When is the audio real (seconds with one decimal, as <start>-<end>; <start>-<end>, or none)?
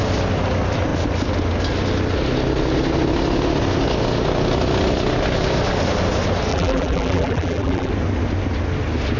0.0-6.5; 7.9-9.2